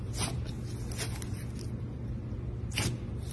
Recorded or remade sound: recorded